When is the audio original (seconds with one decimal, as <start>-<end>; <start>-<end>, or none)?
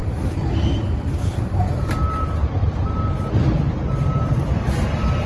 1.6-2.4; 4.3-5.3